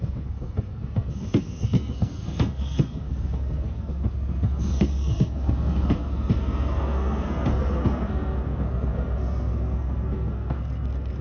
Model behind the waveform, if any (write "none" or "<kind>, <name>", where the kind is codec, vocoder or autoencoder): codec, SNAC